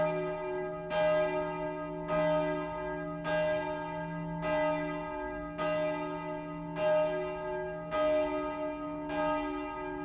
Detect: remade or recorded recorded